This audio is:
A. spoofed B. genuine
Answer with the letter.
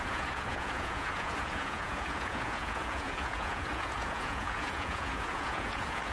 A